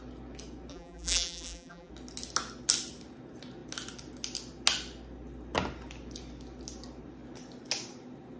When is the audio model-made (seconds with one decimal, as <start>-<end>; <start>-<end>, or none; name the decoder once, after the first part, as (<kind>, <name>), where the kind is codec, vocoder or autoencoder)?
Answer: 0.7-1.9 (vocoder, BigVGAN v2)